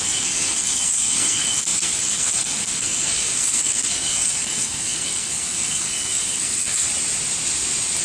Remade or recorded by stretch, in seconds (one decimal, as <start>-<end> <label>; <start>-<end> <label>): 0.0-6.9 remade; 6.9-8.0 recorded